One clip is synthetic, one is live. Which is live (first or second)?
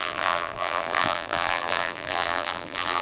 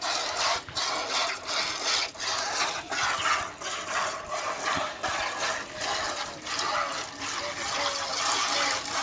second